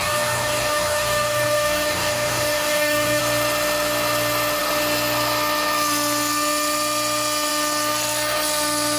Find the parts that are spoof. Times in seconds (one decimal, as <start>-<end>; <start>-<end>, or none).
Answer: 0.0-3.2